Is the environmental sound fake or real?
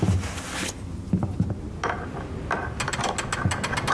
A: real